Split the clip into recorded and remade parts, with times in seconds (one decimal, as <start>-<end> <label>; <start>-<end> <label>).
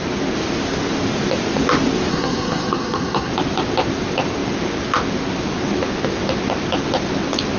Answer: 0.0-2.1 recorded; 2.1-3.3 remade; 3.3-7.6 recorded